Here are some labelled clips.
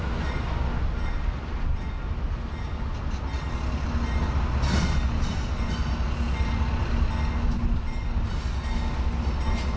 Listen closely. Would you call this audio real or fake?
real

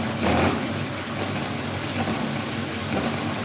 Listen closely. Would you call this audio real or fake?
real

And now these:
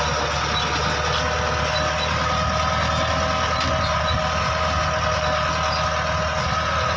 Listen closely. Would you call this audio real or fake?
real